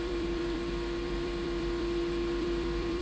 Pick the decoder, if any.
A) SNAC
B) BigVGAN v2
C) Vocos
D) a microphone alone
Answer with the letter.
B